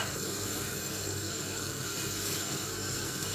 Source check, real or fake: fake